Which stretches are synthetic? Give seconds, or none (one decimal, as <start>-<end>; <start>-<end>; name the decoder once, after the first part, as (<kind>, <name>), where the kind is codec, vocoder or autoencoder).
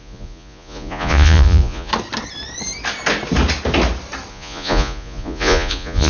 0.0-1.9 (vocoder, Vocos); 4.3-6.1